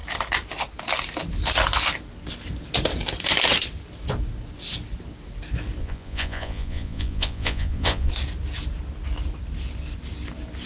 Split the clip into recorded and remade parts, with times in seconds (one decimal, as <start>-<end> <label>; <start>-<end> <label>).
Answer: 0.0-5.8 recorded; 5.8-8.1 remade; 8.1-10.7 recorded